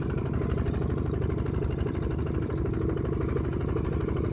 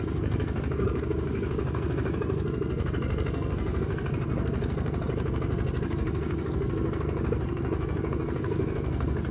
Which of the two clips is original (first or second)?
first